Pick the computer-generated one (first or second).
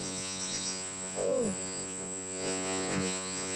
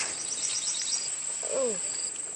first